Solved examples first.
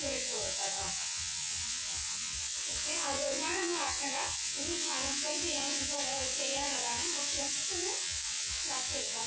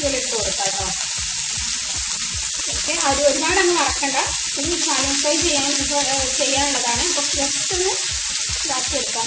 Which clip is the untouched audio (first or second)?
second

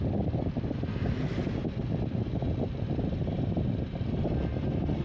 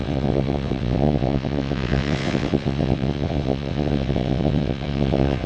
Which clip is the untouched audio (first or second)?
first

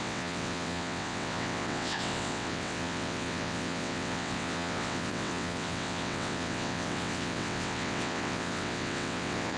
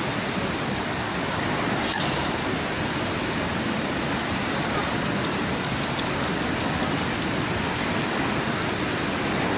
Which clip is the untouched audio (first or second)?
second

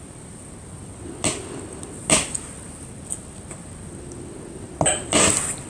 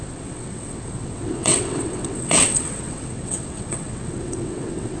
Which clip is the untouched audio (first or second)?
first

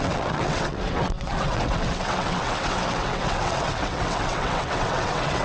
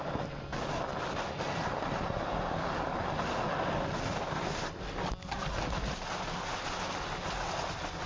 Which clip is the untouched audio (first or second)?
second